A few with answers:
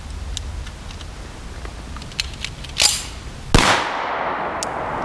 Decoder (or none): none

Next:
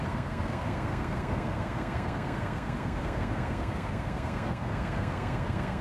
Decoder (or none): codec, SNAC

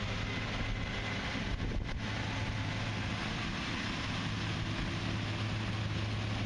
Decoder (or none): none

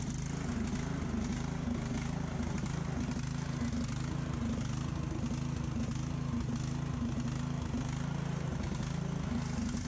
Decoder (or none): none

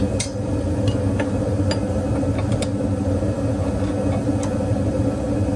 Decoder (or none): none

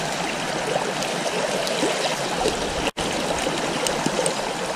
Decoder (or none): none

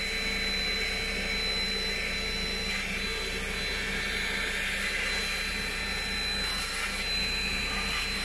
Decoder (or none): none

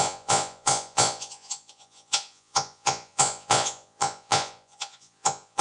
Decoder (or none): vocoder, Vocos